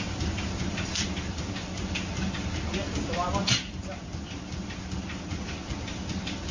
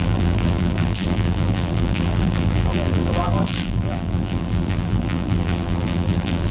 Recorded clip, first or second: first